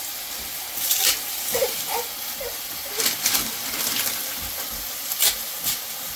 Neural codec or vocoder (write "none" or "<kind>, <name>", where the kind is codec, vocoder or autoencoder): none